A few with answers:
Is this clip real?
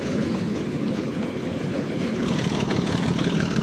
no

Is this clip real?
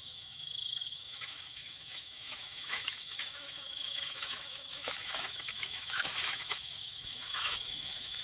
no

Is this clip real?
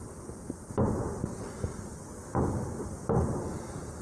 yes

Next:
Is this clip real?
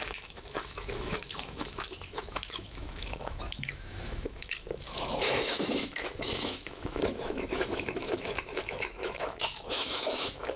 no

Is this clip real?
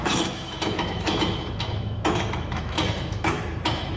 no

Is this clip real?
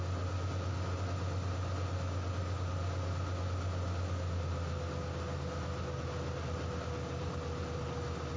yes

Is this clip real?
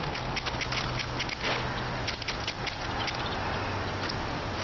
yes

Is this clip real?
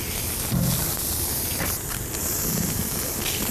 yes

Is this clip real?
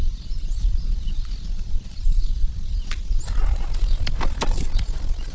yes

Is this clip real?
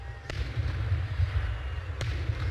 yes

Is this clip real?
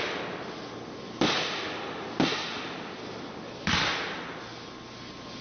yes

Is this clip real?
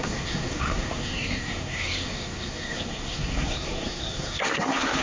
no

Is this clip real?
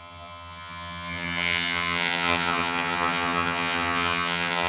no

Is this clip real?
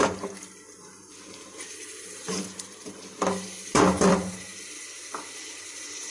yes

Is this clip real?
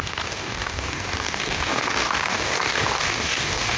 no